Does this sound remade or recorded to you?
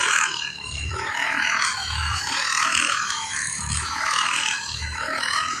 remade